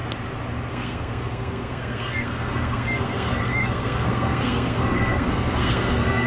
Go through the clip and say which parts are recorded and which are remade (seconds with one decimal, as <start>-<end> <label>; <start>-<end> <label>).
0.0-0.7 recorded; 0.7-6.3 remade